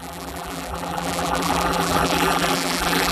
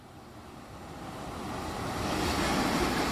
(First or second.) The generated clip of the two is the first